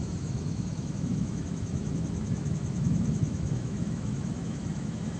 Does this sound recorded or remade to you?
remade